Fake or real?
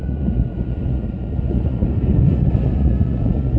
fake